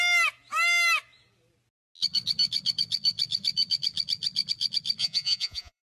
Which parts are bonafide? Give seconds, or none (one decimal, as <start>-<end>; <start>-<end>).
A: 0.0-5.0